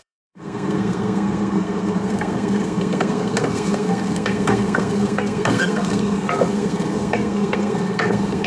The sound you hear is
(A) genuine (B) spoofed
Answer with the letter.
B